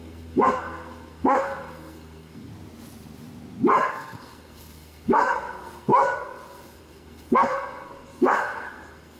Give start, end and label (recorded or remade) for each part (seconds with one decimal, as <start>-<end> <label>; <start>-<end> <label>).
0.0-2.5 remade; 2.5-3.9 recorded; 3.9-9.2 remade